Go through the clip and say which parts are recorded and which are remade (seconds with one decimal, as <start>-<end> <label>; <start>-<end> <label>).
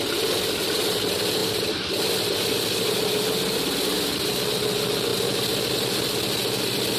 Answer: 0.0-7.0 recorded